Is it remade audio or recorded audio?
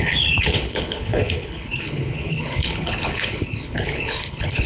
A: remade